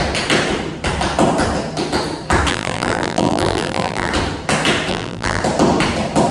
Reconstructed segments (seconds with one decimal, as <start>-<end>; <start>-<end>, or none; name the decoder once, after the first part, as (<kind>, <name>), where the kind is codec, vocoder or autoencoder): 2.5-4.1 (vocoder, BigVGAN v2); 4.9-5.4